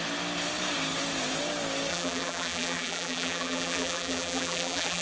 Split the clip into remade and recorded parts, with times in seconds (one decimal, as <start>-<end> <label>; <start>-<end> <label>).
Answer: 0.0-1.9 recorded; 1.9-5.0 remade